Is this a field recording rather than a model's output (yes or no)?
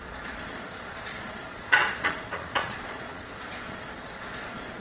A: no